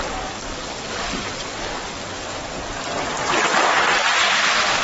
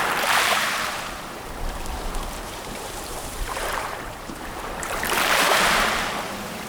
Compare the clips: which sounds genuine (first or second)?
first